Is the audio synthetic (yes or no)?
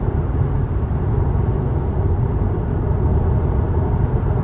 no